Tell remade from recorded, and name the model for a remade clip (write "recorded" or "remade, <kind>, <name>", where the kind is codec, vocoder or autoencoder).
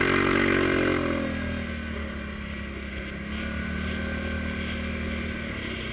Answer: recorded